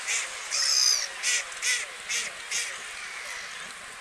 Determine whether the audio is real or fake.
real